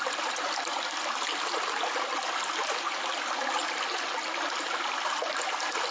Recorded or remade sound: recorded